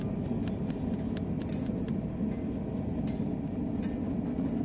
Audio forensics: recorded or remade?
recorded